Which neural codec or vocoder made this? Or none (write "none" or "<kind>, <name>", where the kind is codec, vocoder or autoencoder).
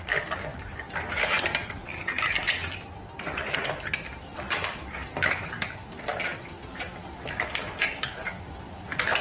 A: vocoder, BigVGAN v2